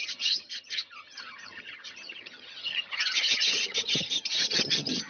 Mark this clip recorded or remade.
remade